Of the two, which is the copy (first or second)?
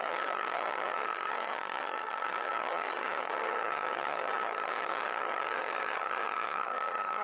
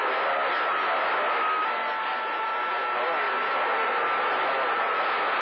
first